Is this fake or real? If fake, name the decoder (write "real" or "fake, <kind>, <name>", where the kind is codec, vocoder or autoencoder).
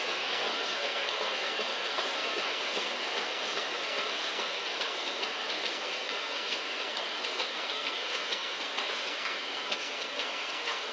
fake, codec, SNAC